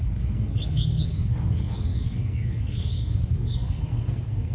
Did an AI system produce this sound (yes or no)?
yes